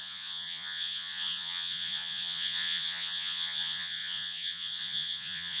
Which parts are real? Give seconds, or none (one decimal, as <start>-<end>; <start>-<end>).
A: none